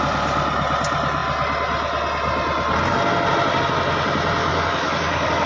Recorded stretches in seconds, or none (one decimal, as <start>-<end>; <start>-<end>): 0.0-4.4